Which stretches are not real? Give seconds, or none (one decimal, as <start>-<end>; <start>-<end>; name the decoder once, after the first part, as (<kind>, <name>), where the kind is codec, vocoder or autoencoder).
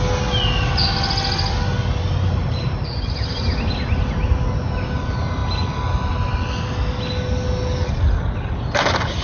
2.4-3.3 (vocoder, BigVGAN v2)